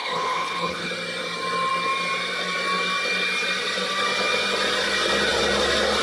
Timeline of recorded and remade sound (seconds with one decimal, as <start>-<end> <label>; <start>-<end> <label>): 0.0-0.9 remade; 0.9-6.0 recorded